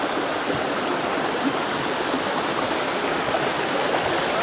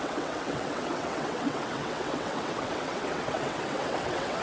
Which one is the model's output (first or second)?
second